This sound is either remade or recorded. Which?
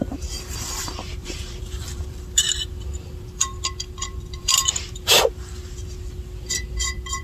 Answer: remade